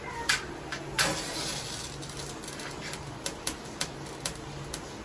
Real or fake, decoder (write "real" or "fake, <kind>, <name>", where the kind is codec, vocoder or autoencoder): real